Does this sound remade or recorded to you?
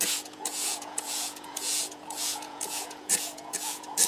remade